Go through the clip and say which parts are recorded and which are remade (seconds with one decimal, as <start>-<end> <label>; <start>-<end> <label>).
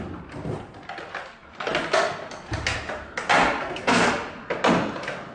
0.0-3.6 recorded; 3.6-4.1 remade; 4.1-5.3 recorded